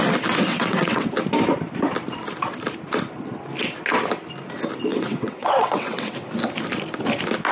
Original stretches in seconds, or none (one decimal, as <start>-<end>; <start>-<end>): 0.0-0.5; 1.1-4.9; 6.3-7.5